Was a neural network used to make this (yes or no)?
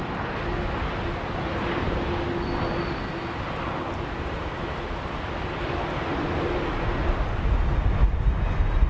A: no